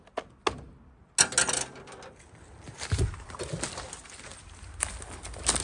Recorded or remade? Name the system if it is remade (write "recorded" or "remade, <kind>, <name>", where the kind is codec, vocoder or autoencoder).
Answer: recorded